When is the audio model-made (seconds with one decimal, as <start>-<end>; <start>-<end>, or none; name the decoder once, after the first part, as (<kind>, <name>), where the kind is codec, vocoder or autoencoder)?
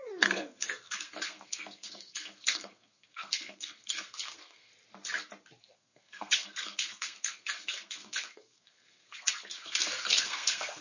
0.0-4.7 (codec, SNAC); 5.6-10.8